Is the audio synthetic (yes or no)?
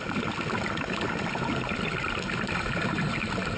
no